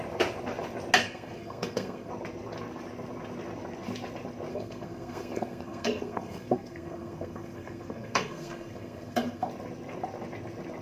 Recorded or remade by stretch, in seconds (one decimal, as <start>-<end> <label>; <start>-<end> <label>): 0.0-1.0 recorded; 1.0-2.1 remade; 2.1-4.5 recorded; 4.5-9.5 remade; 9.5-10.8 recorded